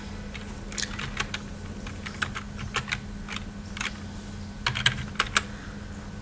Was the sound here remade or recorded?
recorded